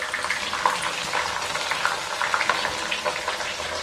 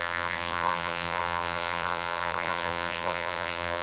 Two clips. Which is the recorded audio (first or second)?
first